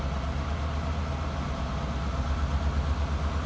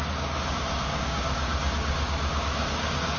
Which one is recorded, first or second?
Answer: first